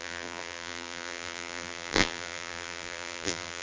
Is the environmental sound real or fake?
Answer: fake